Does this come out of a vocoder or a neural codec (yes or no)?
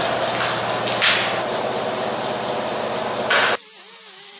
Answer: no